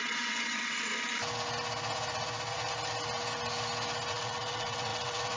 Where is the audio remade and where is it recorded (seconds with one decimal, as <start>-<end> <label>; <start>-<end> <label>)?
0.0-0.9 remade; 0.9-4.1 recorded; 4.1-5.4 remade